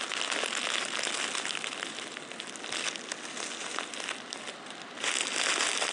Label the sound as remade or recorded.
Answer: recorded